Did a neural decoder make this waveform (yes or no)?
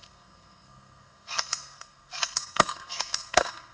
yes